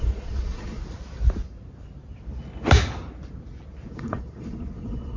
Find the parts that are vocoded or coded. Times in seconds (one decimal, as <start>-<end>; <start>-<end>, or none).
0.0-0.8; 3.9-5.2